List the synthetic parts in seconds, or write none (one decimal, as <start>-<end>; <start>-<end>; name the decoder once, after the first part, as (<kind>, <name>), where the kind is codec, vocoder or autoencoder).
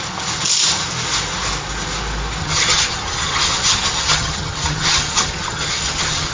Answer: 2.4-6.3 (vocoder, HiFi-GAN)